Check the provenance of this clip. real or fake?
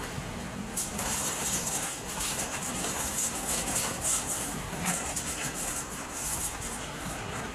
fake